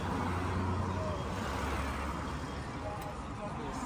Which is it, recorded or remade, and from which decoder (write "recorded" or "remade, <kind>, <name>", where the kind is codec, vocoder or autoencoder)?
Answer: recorded